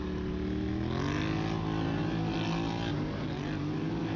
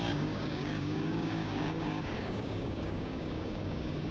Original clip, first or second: first